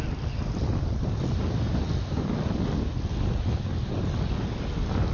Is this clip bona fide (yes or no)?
yes